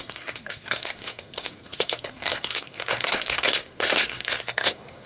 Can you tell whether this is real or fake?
fake